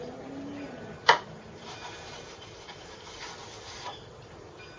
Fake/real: fake